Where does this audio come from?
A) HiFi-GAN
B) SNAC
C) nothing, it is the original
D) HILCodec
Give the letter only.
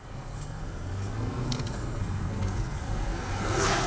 B